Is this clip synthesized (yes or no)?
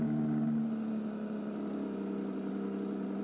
no